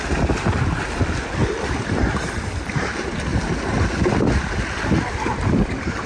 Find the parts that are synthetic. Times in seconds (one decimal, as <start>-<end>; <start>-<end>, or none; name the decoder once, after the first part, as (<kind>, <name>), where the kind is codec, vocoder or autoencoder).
none

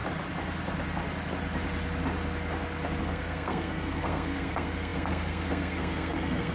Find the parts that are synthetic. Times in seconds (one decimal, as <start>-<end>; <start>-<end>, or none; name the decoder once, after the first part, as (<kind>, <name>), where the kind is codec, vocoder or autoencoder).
3.0-6.5 (codec, SNAC)

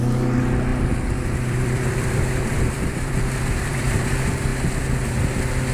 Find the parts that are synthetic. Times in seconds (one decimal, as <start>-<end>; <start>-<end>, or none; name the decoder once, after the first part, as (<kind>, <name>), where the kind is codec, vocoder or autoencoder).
0.7-4.1 (vocoder, BigVGAN v2)